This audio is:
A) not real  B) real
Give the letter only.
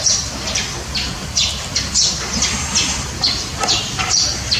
B